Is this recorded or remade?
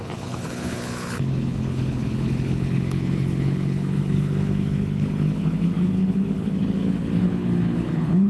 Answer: remade